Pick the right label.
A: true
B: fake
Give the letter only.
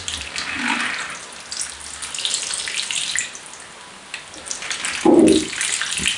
A